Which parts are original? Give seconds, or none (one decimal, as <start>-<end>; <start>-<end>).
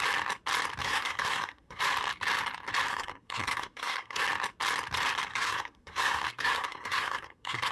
0.0-0.8; 1.8-2.9; 4.2-5.3